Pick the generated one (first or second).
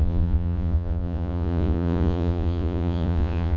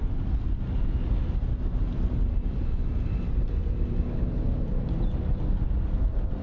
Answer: first